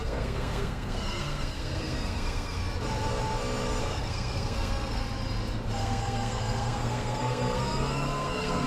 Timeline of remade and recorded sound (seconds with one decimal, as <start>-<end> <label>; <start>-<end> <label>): 0.0-2.6 remade; 2.6-3.8 recorded; 3.8-5.0 remade; 5.0-5.8 recorded; 5.8-8.7 remade